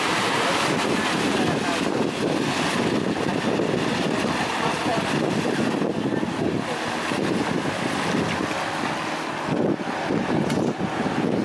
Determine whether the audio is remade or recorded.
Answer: recorded